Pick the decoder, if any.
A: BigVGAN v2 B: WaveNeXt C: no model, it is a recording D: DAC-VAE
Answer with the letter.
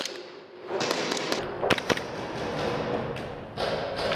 C